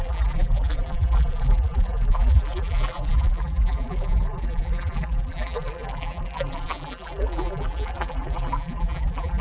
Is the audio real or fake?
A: fake